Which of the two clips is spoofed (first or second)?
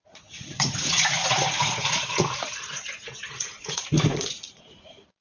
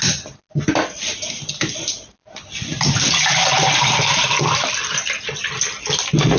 first